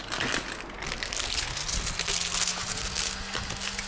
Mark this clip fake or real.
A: real